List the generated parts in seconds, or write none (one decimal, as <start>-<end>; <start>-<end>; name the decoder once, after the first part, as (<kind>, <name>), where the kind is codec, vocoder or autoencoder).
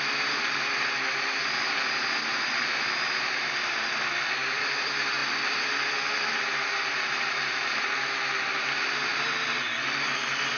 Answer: none